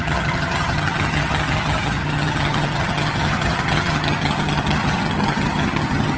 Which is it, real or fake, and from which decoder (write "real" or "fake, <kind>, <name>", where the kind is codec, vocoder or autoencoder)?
fake, vocoder, HiFi-GAN